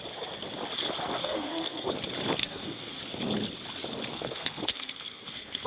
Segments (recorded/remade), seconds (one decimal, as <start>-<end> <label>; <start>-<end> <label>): 0.0-1.2 recorded; 1.2-1.9 remade; 1.9-2.4 recorded; 2.4-3.0 remade; 3.0-4.1 recorded; 4.1-5.7 remade

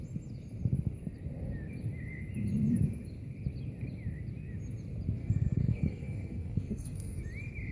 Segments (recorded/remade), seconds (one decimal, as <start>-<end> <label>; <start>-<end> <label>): 0.0-5.2 recorded; 5.2-7.2 remade; 7.2-7.7 recorded